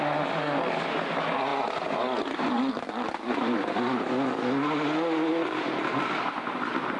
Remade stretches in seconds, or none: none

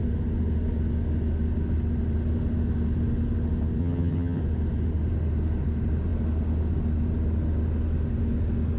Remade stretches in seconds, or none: 3.8-4.4

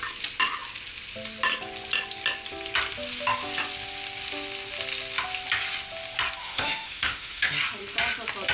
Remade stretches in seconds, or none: 6.4-7.5

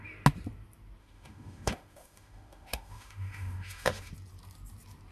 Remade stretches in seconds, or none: 1.0-4.1

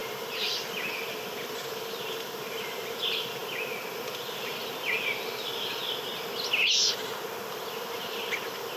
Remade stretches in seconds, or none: 0.0-3.4; 4.6-5.8; 7.7-8.8

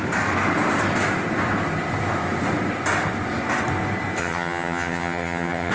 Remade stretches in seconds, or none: 4.2-5.7

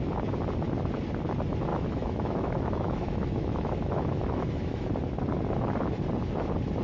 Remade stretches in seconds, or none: 1.7-4.9

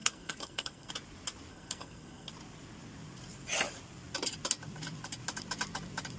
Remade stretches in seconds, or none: 0.0-0.9; 1.5-2.3